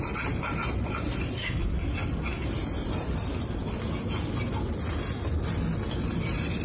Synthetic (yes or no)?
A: no